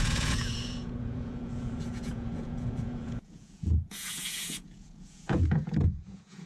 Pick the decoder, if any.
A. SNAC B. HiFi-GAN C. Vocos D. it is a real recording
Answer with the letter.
C